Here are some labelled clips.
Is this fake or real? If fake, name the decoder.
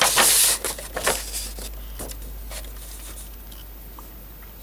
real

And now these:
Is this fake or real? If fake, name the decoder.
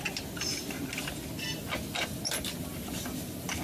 real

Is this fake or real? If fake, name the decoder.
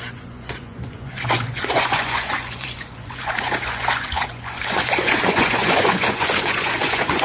fake, vocoder, Vocos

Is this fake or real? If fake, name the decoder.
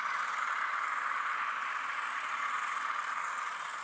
real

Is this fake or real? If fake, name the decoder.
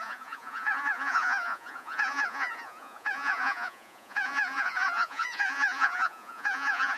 fake, vocoder, Vocos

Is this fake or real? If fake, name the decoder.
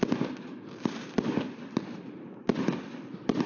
real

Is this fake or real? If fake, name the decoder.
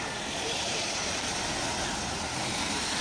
real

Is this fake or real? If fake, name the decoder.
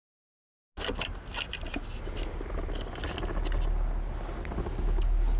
real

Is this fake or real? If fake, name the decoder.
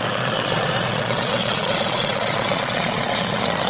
fake, vocoder, Vocos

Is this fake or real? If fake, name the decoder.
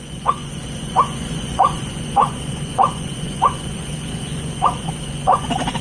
fake, vocoder, Vocos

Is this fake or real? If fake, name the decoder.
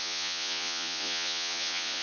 fake, vocoder, Vocos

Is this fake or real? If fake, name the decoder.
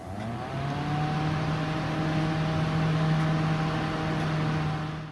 real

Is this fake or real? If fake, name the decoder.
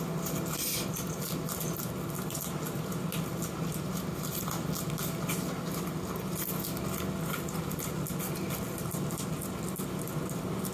real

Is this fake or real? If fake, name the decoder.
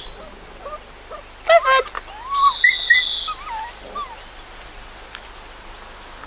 real